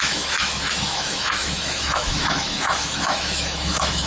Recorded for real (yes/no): no